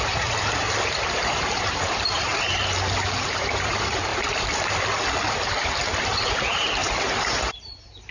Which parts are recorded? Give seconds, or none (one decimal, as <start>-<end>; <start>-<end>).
2.3-3.2; 4.1-6.3